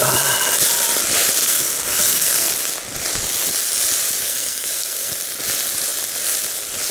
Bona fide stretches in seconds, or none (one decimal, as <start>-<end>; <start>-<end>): 0.0-1.4; 2.5-4.2; 5.1-6.9